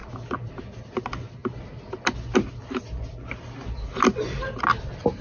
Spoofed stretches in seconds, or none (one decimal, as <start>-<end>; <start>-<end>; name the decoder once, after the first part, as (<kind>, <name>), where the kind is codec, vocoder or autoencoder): none